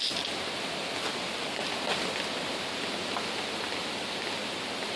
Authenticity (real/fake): real